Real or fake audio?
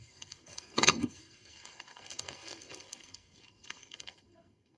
fake